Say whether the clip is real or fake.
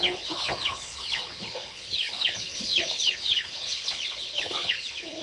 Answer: fake